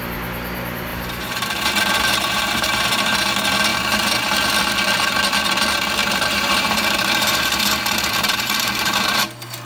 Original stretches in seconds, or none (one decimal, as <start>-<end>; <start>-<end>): 0.0-0.9; 3.3-3.7; 4.6-6.0; 9.2-9.7